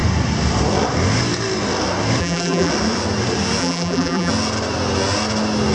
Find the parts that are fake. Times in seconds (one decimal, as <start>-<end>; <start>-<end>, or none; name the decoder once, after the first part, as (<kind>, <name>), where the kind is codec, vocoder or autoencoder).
2.2-2.7 (vocoder, BigVGAN v2); 3.6-4.3